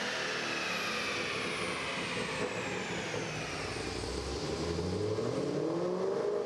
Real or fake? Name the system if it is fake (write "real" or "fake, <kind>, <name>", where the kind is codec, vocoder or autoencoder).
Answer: real